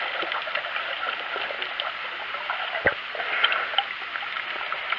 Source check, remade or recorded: recorded